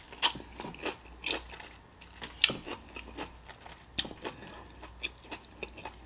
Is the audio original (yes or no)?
yes